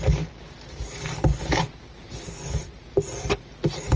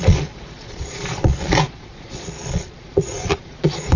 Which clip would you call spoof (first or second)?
second